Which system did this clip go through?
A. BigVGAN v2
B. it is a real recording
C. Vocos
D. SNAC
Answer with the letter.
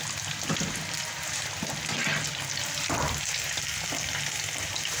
B